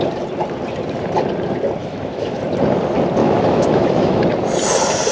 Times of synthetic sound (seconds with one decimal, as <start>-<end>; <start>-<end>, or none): 1.8-2.4; 3.2-4.2